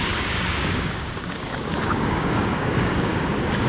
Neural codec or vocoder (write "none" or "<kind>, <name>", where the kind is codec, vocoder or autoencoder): codec, DAC